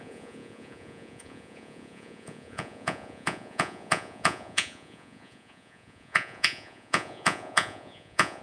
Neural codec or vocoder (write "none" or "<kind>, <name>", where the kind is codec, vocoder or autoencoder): vocoder, Vocos